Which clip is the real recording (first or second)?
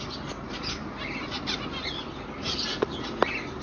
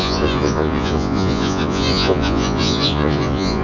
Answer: first